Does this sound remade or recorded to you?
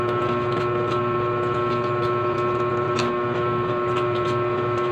recorded